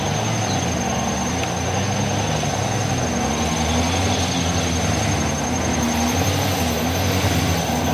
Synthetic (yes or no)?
no